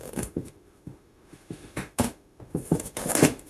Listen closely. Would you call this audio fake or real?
fake